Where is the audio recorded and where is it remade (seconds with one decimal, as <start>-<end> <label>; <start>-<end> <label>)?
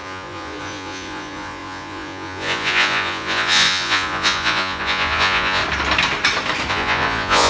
0.0-5.6 remade; 5.6-6.7 recorded; 6.7-7.5 remade